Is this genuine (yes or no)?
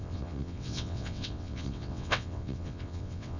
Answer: no